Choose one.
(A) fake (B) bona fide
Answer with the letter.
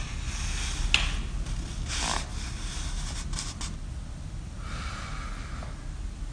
B